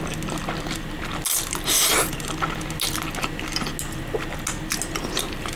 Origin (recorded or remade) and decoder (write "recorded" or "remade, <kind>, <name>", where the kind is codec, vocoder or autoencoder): recorded